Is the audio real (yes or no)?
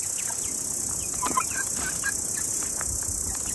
yes